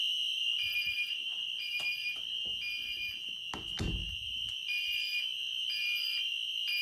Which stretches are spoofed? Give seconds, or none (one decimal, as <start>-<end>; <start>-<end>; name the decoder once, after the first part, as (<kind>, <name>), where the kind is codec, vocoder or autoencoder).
0.0-2.5 (vocoder, BigVGAN v2); 4.5-6.8